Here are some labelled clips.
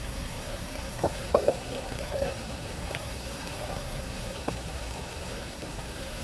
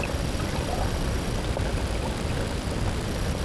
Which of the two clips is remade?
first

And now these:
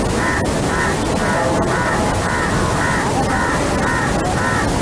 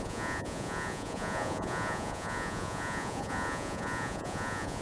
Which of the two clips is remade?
second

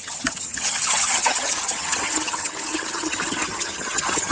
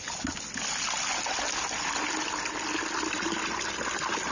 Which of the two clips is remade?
first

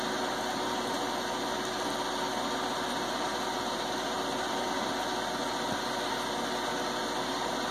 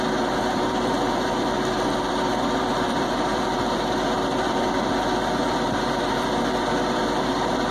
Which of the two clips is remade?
second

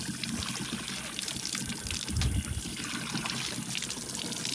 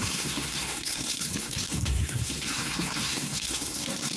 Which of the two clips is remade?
second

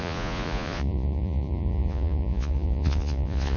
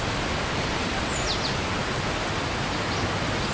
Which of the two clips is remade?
first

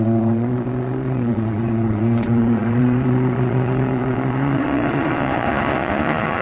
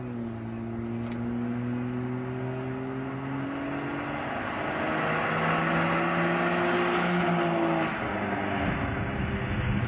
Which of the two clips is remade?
first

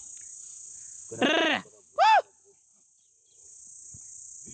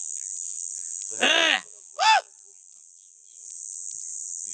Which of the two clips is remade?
second